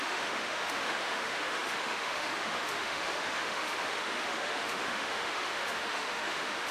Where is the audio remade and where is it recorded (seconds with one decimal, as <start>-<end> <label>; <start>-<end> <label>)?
0.0-6.7 remade